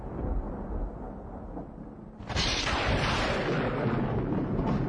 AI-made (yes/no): no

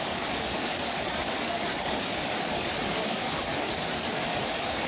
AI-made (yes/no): yes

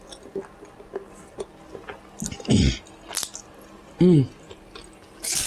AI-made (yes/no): no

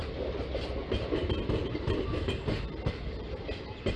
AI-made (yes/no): no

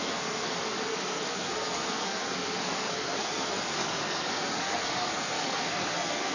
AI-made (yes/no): yes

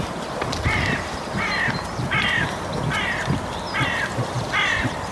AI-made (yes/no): no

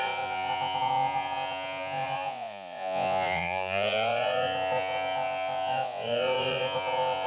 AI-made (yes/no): yes